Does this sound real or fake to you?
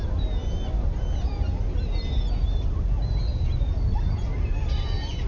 real